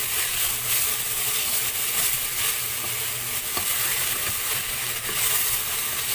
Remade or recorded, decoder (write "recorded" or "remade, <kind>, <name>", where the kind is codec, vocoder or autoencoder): recorded